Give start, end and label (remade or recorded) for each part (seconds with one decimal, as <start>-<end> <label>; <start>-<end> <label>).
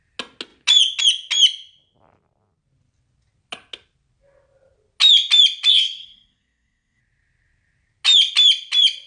0.0-5.7 recorded; 5.7-7.0 remade; 7.0-9.1 recorded